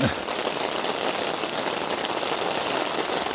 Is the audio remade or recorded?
recorded